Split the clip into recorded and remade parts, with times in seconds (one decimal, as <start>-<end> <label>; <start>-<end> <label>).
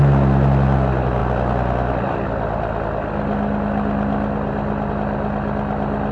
0.0-6.1 recorded